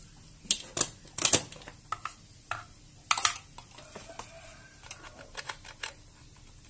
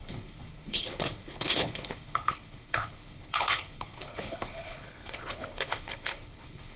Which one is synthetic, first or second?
second